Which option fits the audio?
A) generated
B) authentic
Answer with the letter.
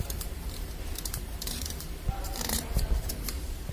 A